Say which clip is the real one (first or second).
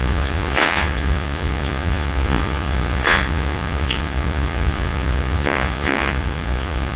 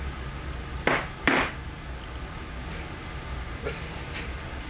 second